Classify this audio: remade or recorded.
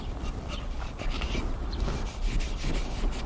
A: recorded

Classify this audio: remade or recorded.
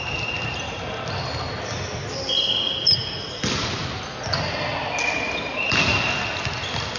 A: recorded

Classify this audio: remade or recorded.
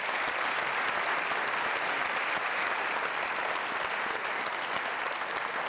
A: recorded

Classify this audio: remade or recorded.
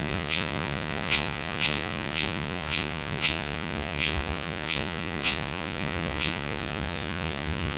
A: remade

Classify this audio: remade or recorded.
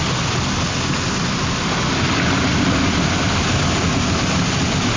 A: recorded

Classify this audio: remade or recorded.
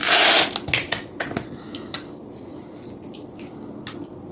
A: recorded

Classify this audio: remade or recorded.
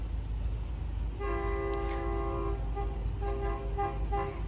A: recorded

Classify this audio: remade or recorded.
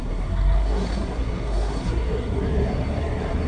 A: remade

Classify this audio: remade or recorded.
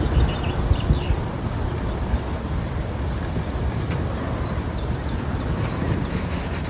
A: recorded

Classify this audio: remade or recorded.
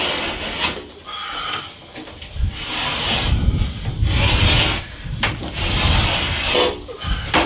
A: recorded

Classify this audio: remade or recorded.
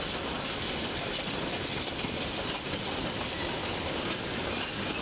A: recorded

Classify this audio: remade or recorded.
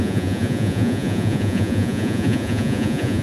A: remade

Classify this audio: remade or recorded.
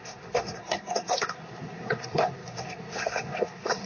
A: remade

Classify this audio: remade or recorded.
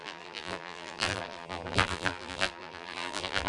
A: remade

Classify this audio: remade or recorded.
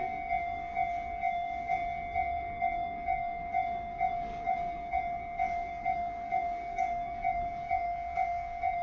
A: remade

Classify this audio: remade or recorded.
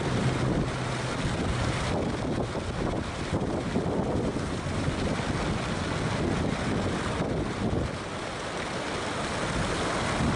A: recorded